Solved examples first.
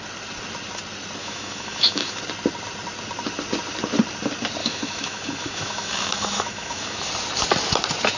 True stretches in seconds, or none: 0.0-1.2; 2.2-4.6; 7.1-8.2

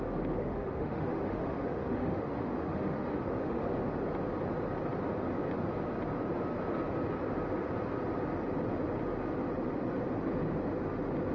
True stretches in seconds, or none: 0.0-0.4; 3.7-11.3

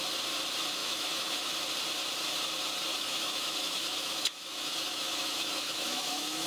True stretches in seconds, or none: 0.0-0.8; 1.5-2.9

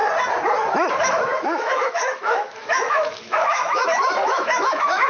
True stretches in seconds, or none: 0.0-0.9

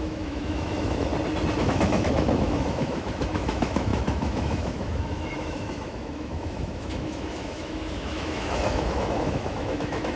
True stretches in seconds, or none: 1.1-1.6